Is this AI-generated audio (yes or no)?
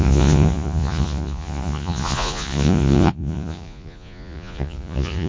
yes